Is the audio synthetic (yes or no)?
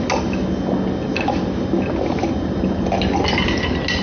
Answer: no